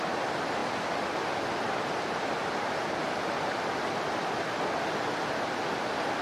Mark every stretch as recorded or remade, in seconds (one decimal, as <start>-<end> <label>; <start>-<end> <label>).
0.0-6.2 recorded